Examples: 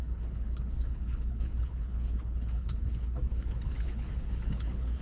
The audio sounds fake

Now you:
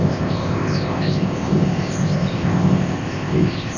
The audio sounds fake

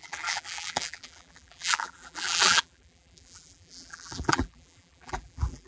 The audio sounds fake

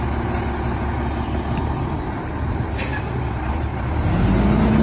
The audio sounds real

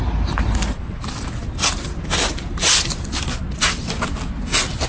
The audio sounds real